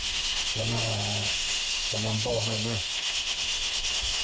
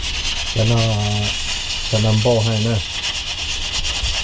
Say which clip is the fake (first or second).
first